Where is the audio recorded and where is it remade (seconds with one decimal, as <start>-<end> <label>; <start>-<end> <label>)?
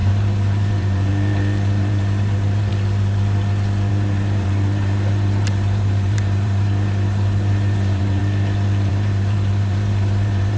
0.0-2.7 remade; 2.7-3.9 recorded; 3.9-8.2 remade; 8.2-8.9 recorded; 8.9-10.6 remade